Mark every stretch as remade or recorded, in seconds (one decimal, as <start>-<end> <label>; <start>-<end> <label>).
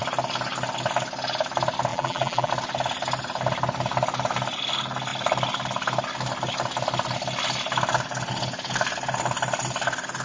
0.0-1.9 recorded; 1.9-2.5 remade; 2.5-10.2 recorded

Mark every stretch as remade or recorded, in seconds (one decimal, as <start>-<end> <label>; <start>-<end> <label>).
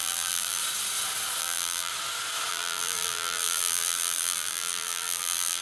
0.0-0.6 remade; 0.6-1.4 recorded; 1.4-1.9 remade; 1.9-2.5 recorded; 2.5-5.6 remade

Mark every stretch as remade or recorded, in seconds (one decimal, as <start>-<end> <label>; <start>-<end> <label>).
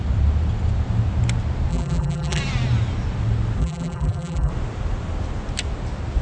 0.0-1.7 recorded; 1.7-2.4 remade; 2.4-3.6 recorded; 3.6-4.5 remade; 4.5-6.2 recorded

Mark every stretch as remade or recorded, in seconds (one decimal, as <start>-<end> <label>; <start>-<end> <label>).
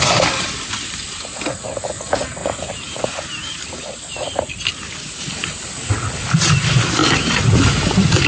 0.0-2.4 recorded; 2.4-4.5 remade; 4.5-7.0 recorded; 7.0-8.3 remade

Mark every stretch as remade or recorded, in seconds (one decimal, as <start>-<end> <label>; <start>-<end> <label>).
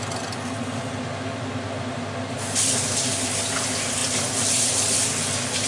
0.0-5.7 recorded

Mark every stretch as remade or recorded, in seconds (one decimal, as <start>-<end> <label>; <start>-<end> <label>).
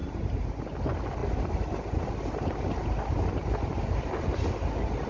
0.0-0.6 remade; 0.6-5.1 recorded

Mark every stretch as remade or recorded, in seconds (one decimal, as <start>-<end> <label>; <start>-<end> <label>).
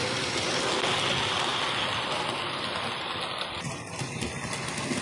0.0-5.0 recorded